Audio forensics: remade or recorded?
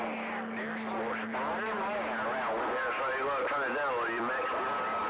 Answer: recorded